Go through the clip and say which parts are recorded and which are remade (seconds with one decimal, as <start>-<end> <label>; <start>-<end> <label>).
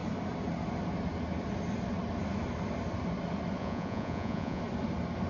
0.0-3.6 recorded; 3.6-4.6 remade; 4.6-5.3 recorded